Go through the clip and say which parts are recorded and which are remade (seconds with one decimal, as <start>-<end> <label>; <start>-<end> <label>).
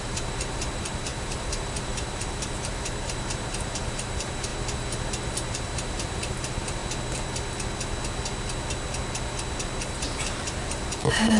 0.0-4.5 remade; 4.5-5.5 recorded; 5.5-6.8 remade; 6.8-9.8 recorded; 9.8-11.4 remade